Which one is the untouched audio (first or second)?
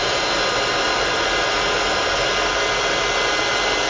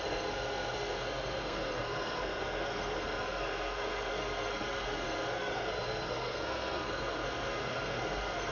first